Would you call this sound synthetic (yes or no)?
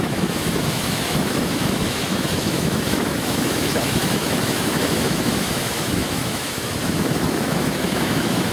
yes